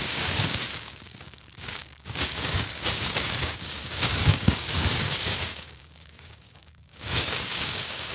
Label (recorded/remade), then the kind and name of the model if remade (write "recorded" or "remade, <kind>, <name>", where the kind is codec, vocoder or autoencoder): remade, codec, DAC